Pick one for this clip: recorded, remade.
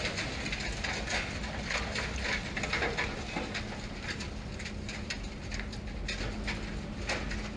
recorded